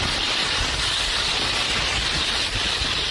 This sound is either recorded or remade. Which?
recorded